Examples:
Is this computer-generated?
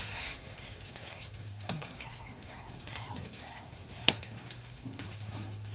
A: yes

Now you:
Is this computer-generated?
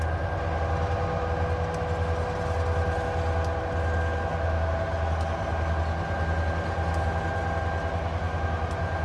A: no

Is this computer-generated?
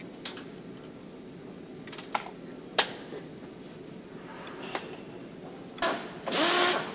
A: no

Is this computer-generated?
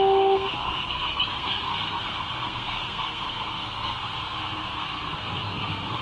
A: yes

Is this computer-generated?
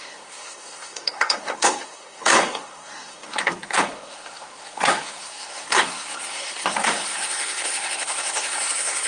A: yes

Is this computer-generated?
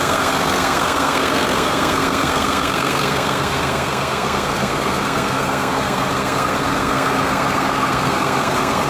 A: yes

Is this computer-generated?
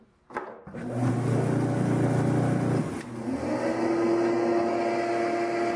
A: no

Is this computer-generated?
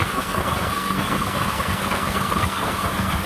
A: yes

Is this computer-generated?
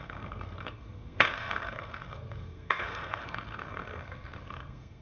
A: yes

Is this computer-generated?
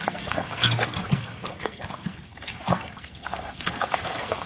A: yes